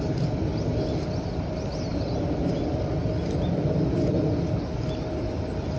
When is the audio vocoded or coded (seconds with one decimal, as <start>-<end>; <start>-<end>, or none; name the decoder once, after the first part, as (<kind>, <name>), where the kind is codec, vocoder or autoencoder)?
none

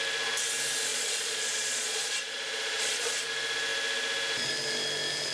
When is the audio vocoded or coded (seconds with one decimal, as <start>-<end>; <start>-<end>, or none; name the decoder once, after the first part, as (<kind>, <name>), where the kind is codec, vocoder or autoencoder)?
0.9-3.1 (vocoder, Vocos)

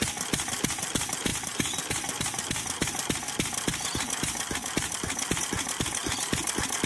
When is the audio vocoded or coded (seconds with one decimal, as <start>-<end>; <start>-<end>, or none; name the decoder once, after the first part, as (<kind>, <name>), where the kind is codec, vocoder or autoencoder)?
none

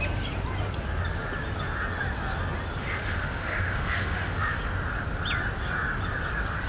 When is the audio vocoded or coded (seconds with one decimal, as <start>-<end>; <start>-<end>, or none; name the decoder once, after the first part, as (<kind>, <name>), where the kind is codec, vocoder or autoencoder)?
2.8-4.6 (autoencoder, DAC-VAE)

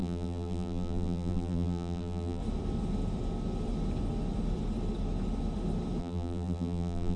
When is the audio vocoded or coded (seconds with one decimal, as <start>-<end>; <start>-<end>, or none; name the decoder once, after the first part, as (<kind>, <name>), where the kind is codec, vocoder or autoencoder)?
0.0-2.4 (vocoder, BigVGAN v2); 6.0-7.2

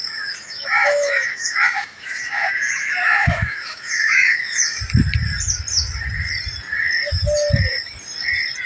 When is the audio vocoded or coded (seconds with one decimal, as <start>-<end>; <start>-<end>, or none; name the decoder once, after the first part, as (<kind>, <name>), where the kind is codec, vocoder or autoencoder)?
0.0-4.8 (autoencoder, DAC-VAE)

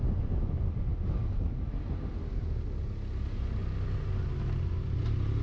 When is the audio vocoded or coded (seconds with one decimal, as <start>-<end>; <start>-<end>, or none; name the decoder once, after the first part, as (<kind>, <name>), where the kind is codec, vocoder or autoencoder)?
none